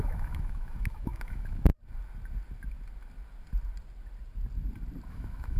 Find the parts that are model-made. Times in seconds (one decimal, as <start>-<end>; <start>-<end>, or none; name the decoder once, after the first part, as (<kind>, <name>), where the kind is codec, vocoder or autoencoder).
0.0-1.7 (autoencoder, DAC-VAE); 5.1-5.6